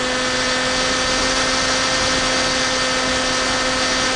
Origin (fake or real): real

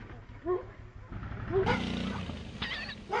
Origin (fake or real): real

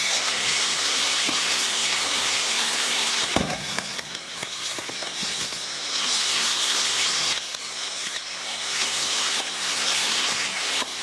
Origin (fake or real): fake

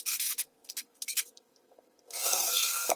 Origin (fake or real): fake